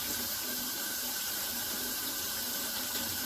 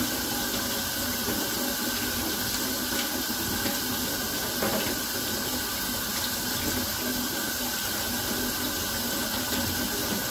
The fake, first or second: first